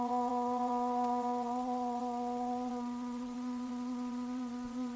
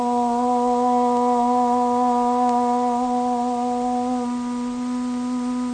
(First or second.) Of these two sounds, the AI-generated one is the first